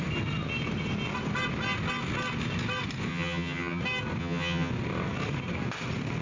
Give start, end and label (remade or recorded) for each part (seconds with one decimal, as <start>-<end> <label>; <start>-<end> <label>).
0.0-3.1 recorded; 3.1-3.8 remade; 3.8-4.2 recorded; 4.2-4.7 remade; 4.7-6.2 recorded